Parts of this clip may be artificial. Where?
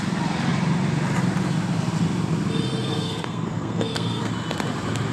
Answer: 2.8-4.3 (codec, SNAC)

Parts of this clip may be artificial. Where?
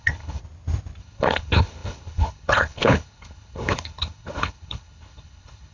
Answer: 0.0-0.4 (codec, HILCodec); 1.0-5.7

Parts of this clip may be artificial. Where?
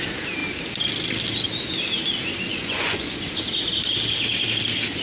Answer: 2.5-3.2 (vocoder, Vocos)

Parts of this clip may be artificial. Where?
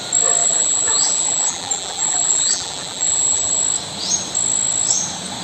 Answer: 0.4-3.6 (vocoder, BigVGAN v2)